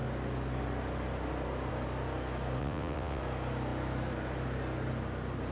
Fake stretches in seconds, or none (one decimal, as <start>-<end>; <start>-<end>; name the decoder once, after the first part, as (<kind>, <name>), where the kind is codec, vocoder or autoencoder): 2.6-3.2 (vocoder, WaveNeXt)